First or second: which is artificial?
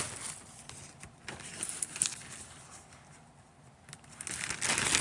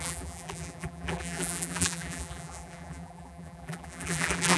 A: second